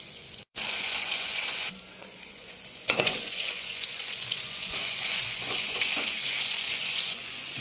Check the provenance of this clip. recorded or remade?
remade